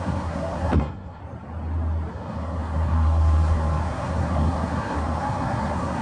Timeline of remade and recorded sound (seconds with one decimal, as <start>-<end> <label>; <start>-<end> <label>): 0.0-1.2 remade; 1.2-2.1 recorded; 2.1-6.0 remade